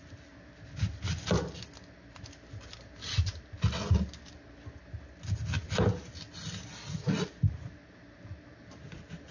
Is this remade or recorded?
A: recorded